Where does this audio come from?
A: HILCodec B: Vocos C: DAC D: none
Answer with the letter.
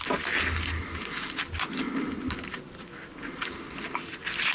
D